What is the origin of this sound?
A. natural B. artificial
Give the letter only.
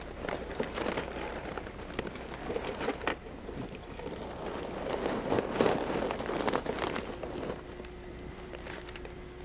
B